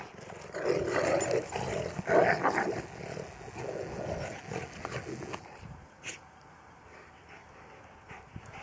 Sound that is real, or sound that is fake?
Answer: real